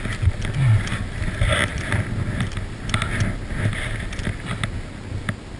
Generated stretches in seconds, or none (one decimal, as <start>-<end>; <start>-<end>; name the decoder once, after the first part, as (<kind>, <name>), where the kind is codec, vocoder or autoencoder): 0.6-1.2 (vocoder, BigVGAN v2); 1.7-3.1